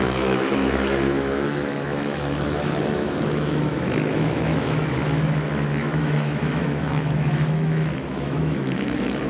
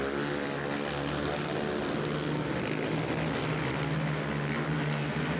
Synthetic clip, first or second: first